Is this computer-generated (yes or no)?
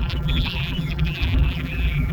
yes